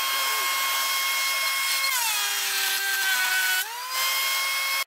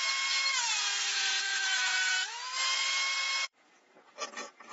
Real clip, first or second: first